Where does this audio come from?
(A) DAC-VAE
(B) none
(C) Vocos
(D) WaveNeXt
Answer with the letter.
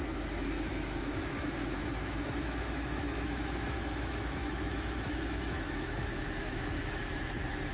A